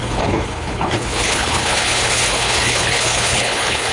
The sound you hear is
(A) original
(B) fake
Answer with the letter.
B